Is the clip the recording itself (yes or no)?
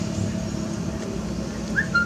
yes